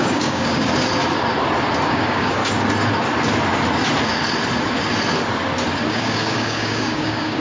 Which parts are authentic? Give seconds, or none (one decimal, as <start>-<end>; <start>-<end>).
0.7-1.9; 2.4-5.9